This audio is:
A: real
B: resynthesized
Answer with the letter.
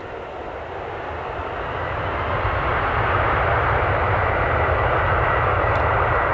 A